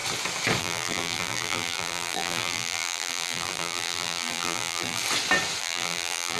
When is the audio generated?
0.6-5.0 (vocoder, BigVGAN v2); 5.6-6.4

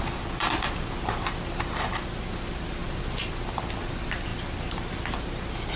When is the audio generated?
none